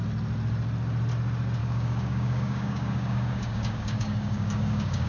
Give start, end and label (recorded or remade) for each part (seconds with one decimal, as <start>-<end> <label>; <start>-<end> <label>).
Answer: 0.0-1.6 recorded; 1.6-5.1 remade